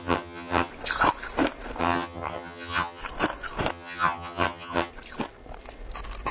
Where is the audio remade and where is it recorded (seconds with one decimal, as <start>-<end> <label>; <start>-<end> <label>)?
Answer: 0.0-0.7 remade; 0.7-1.8 recorded; 1.8-3.0 remade; 3.0-3.7 recorded; 3.7-4.9 remade; 4.9-6.3 recorded